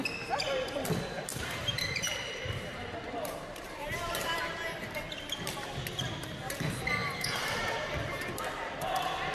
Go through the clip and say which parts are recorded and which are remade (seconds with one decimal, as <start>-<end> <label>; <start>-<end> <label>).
0.0-1.3 recorded; 1.3-5.1 remade; 5.1-7.0 recorded; 7.0-7.6 remade; 7.6-9.3 recorded